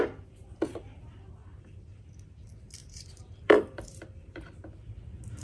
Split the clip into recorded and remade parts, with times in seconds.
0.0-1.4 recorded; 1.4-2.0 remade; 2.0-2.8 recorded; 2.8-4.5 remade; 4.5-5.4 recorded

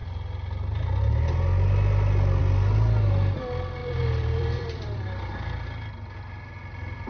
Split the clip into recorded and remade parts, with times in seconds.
0.0-3.8 recorded; 3.8-6.5 remade; 6.5-7.1 recorded

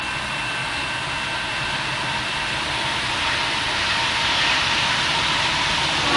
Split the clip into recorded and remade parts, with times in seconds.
0.0-6.2 recorded